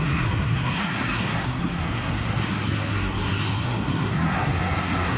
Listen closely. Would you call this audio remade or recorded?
remade